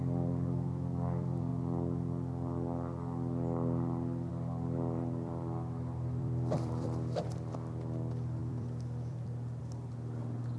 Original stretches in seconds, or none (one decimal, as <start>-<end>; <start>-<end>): 1.5-4.3